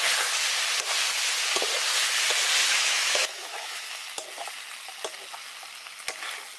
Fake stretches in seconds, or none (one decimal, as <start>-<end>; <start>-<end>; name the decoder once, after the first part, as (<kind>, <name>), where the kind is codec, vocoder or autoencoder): 2.6-4.0 (autoencoder, DAC-VAE)